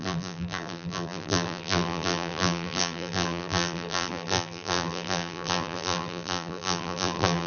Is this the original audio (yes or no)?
no